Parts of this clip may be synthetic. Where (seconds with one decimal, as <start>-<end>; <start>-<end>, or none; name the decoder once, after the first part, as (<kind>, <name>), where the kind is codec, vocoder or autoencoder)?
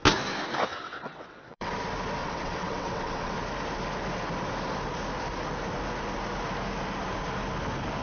0.8-1.7 (vocoder, WaveNeXt); 2.2-3.3